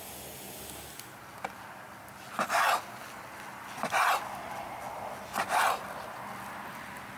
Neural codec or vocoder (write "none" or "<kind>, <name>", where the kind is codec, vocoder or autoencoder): none